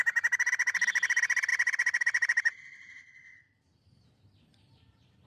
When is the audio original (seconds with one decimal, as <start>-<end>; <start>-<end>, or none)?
0.0-5.3